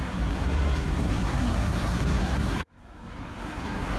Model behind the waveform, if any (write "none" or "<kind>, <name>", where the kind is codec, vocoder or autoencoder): codec, SNAC